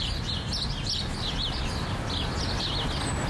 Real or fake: real